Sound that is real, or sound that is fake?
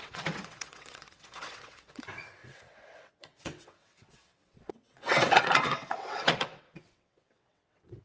fake